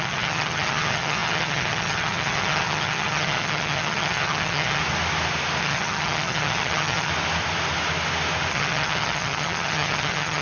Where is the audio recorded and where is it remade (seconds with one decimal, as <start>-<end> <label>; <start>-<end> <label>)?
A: 0.0-4.8 remade; 4.8-5.6 recorded; 5.6-7.1 remade; 7.1-8.5 recorded; 8.5-10.4 remade